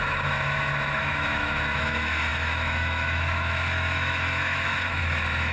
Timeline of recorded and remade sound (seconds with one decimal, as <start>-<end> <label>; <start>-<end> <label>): 0.0-5.5 remade